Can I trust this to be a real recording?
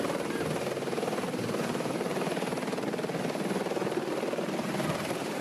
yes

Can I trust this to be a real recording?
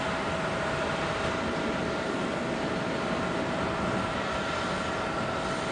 yes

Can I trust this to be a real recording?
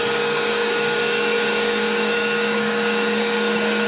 no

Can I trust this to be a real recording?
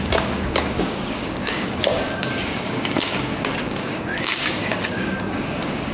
no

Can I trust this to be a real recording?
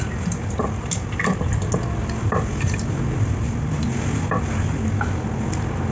yes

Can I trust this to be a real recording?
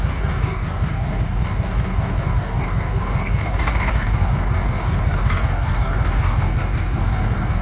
no